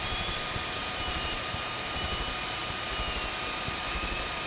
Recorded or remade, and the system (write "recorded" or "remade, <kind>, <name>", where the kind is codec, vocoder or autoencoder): remade, vocoder, BigVGAN v2